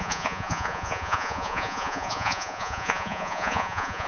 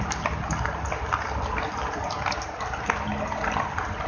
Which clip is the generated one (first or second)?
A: first